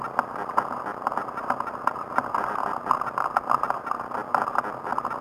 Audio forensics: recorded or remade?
recorded